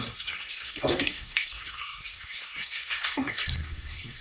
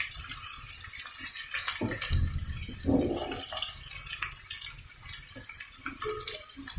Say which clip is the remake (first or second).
first